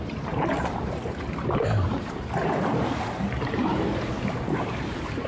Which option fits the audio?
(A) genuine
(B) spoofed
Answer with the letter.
B